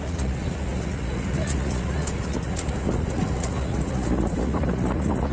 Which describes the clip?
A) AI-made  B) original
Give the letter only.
A